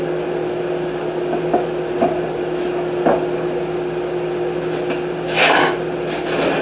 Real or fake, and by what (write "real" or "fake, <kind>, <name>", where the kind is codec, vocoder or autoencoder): real